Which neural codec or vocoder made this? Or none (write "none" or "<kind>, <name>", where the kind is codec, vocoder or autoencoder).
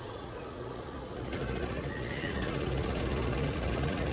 vocoder, Vocos